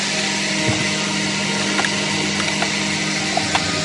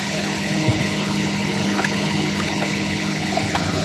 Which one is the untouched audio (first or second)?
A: first